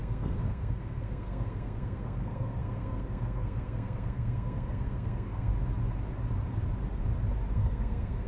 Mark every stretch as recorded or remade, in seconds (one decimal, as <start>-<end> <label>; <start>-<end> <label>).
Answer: 0.0-5.5 remade; 5.5-7.5 recorded; 7.5-8.3 remade